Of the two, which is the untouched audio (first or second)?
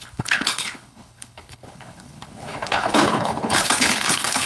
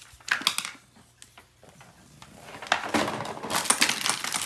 second